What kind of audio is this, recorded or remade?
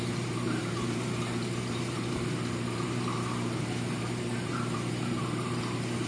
remade